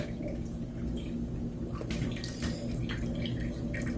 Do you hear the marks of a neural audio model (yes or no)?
no